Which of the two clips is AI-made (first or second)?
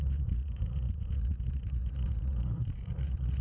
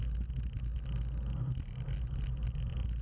first